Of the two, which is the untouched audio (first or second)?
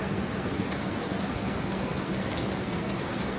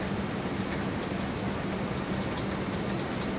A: second